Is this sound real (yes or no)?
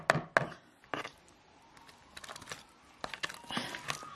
yes